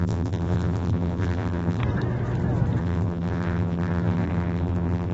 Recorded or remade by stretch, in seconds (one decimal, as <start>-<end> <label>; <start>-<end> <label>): 0.0-1.8 remade; 1.8-2.8 recorded; 2.8-5.1 remade